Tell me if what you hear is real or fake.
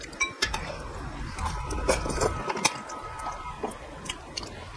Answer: fake